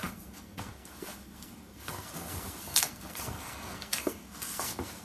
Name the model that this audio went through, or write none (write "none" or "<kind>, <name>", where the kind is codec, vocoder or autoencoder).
codec, SNAC